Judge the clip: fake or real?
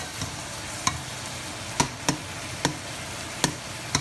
real